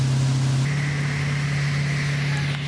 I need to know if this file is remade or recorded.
recorded